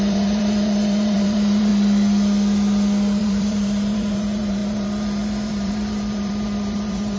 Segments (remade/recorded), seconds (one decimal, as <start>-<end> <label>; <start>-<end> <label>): 0.0-1.7 remade; 1.7-3.2 recorded; 3.2-7.2 remade